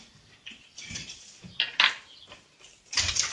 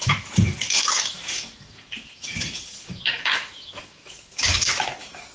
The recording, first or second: first